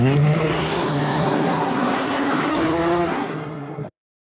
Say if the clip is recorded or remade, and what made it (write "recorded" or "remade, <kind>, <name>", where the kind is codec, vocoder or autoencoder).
remade, codec, SNAC